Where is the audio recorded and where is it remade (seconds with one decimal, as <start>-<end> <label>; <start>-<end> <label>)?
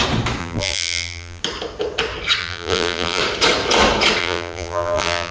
0.0-0.4 recorded; 0.4-1.4 remade; 1.4-2.4 recorded; 2.4-3.2 remade; 3.2-4.2 recorded; 4.2-5.3 remade